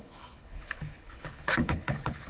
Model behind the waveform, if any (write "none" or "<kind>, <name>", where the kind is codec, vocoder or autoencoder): codec, HILCodec